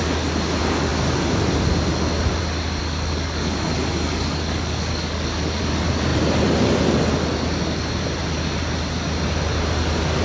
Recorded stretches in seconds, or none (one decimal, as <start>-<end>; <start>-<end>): 0.0-2.8; 5.6-10.2